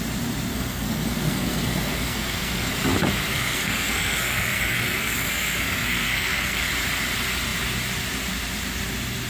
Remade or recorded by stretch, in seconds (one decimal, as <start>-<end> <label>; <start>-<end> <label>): 0.0-0.5 recorded; 0.5-2.7 remade; 2.7-3.2 recorded; 3.2-6.7 remade; 6.7-9.3 recorded